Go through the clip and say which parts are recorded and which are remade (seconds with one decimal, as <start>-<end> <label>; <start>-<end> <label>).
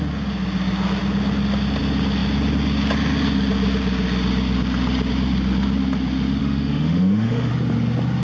0.0-6.4 recorded; 6.4-7.5 remade; 7.5-8.2 recorded